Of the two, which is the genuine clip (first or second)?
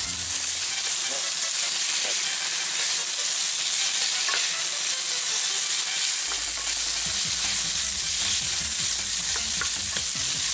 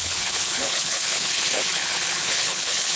first